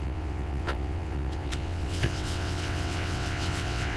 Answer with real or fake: fake